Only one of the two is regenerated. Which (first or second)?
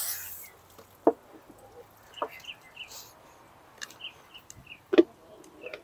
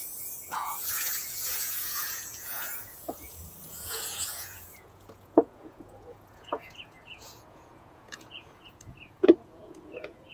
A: second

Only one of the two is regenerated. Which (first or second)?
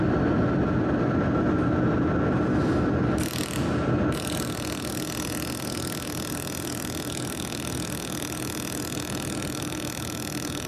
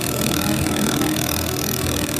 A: second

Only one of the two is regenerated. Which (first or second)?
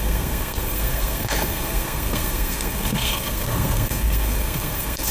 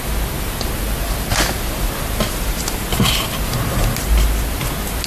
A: first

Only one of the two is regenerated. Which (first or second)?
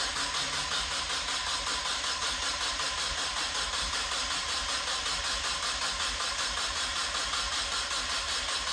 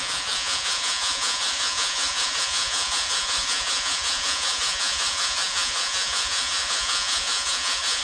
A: second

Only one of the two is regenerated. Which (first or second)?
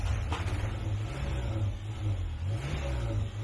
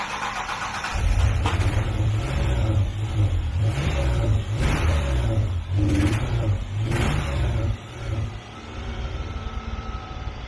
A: second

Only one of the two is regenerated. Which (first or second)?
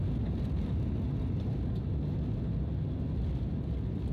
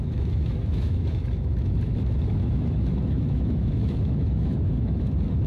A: second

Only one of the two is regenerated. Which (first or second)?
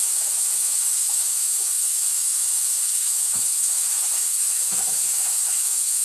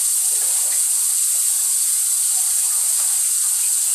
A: first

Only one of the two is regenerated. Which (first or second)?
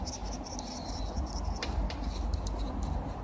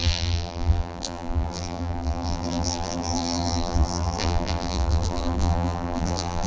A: second